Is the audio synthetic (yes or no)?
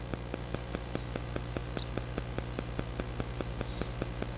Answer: no